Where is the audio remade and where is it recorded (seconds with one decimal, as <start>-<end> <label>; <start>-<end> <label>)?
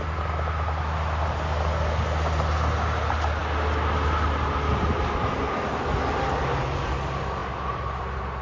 0.0-8.4 recorded